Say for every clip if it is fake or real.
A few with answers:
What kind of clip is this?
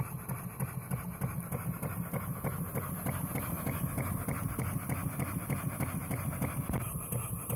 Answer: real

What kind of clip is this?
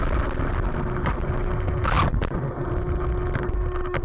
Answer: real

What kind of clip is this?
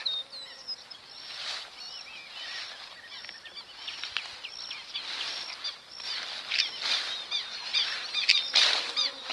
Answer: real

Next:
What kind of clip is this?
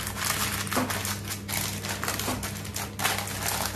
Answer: real